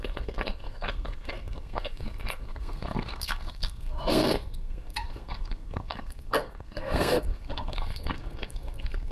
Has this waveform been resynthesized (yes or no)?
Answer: yes